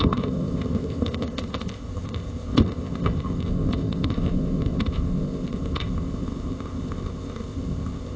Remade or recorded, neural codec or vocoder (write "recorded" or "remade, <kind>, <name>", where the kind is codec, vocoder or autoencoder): remade, codec, ZipCodec